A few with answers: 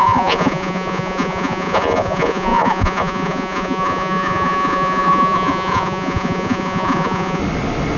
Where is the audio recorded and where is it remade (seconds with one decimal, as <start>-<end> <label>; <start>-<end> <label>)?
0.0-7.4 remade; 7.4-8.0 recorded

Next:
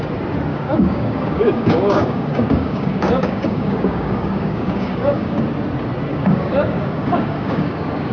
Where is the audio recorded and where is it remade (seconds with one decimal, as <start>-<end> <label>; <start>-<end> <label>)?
0.0-0.5 recorded; 0.5-5.4 remade; 5.4-6.1 recorded; 6.1-8.1 remade

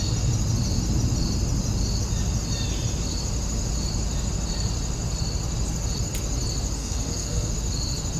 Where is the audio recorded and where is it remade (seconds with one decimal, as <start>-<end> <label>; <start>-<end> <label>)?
0.0-6.8 recorded; 6.8-7.5 remade; 7.5-8.2 recorded